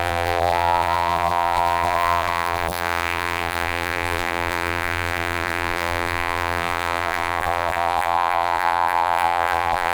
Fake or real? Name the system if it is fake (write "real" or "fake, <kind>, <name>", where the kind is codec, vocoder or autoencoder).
fake, vocoder, BigVGAN v2